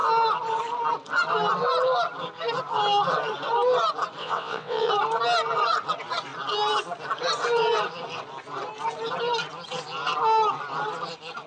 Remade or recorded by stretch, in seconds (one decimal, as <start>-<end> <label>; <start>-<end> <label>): 0.0-4.2 recorded; 4.2-4.9 remade; 4.9-11.5 recorded